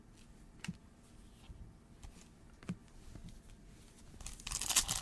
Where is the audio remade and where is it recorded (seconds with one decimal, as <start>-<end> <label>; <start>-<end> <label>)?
0.0-5.0 recorded